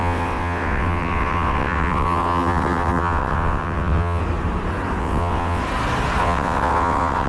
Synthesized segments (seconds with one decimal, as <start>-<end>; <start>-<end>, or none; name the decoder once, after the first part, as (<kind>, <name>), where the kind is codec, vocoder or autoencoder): 0.0-4.2 (vocoder, WaveNeXt); 5.0-5.6; 6.2-7.3